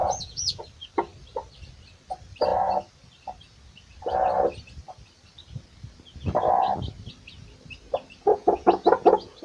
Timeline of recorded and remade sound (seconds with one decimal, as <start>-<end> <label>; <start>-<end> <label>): 0.0-0.6 remade; 0.6-8.3 recorded; 8.3-9.4 remade